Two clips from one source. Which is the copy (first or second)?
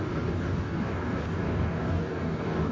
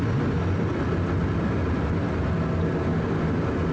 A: first